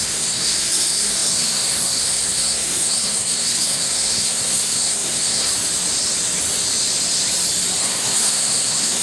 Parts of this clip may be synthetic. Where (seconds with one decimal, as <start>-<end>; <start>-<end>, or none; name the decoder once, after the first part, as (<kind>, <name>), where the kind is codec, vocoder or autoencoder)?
0.0-5.5 (codec, SNAC); 7.8-9.0